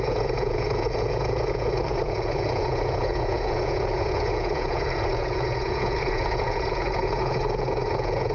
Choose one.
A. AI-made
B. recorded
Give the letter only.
A